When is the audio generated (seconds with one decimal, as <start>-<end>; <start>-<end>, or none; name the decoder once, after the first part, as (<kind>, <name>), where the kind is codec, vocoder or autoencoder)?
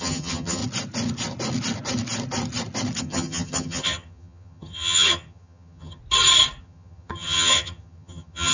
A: 0.0-0.6 (vocoder, HiFi-GAN); 3.0-6.0; 6.6-8.5